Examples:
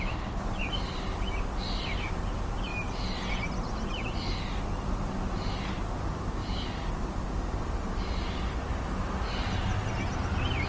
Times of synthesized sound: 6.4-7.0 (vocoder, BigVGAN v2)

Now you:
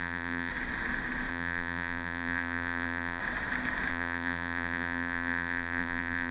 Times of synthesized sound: 0.0-0.5 (vocoder, BigVGAN v2); 1.3-3.2; 3.9-6.3